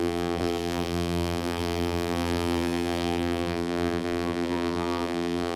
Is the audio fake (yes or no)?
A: yes